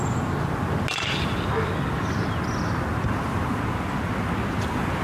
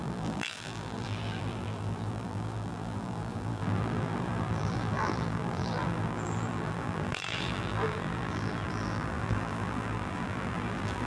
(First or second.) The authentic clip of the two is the first